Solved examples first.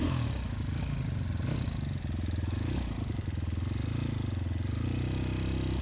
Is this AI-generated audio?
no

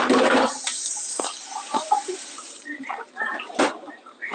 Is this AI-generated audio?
yes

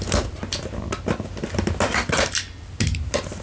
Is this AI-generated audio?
yes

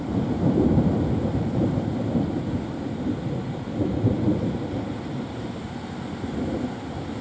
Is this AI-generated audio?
no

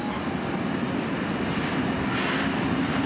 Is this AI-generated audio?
no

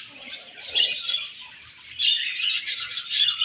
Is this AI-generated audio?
yes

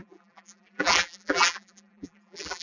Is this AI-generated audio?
yes